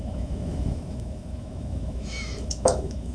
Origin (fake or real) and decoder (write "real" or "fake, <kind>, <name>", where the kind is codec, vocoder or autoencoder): fake, autoencoder, DAC-VAE